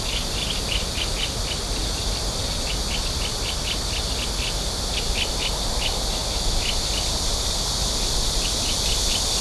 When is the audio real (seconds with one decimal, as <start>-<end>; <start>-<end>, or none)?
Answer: 0.0-9.4